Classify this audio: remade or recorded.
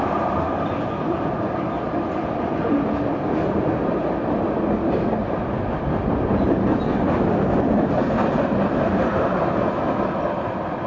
recorded